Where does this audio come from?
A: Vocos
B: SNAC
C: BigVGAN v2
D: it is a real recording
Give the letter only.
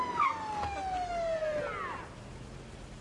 D